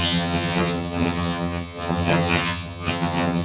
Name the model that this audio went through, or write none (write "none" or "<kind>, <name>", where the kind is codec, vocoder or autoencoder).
vocoder, HiFi-GAN